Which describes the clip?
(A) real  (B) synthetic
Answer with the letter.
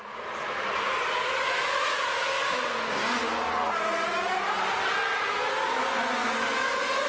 A